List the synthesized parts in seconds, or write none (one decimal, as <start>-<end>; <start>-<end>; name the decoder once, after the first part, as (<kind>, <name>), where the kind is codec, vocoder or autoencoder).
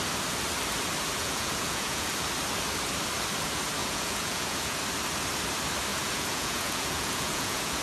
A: 1.2-2.1 (vocoder, Vocos); 3.8-4.8; 5.9-7.8